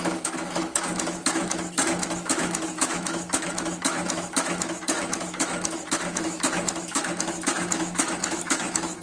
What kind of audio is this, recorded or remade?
remade